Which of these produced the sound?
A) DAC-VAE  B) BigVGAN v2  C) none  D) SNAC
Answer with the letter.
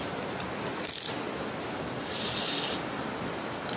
C